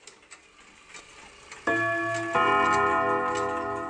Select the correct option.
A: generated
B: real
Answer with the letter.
B